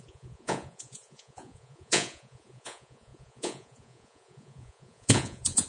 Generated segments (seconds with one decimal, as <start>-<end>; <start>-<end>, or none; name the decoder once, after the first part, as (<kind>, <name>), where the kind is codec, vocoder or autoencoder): 0.0-5.7 (vocoder, Vocos)

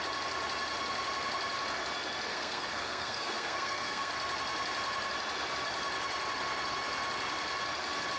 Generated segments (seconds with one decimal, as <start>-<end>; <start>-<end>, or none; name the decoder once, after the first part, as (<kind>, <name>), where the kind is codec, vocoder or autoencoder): 2.3-4.1 (codec, SNAC)

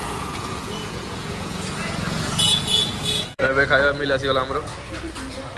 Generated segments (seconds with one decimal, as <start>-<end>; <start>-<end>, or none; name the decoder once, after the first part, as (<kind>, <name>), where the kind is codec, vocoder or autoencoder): 0.0-3.4 (vocoder, Vocos)

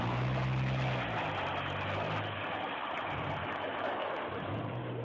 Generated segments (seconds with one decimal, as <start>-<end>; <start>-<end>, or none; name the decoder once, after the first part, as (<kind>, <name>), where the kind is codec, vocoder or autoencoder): 3.4-4.1 (autoencoder, DAC-VAE)

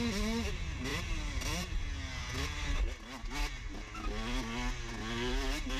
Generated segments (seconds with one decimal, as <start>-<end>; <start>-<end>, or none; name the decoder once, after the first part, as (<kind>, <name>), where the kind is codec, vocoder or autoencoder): 0.9-1.7 (vocoder, BigVGAN v2)

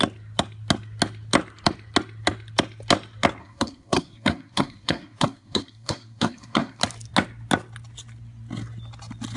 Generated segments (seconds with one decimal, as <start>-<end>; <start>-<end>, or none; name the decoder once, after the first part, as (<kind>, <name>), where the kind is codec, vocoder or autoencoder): 3.4-6.8 (codec, SNAC)

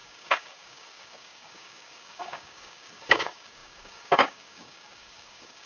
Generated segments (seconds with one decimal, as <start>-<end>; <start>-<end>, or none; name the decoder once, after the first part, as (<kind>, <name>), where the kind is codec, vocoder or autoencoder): 0.0-5.7 (codec, DAC)

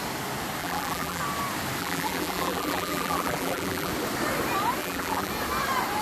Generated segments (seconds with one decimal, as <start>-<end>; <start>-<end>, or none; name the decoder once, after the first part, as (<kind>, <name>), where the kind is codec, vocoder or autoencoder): 0.6-1.2 (vocoder, BigVGAN v2); 1.8-3.9; 4.8-5.3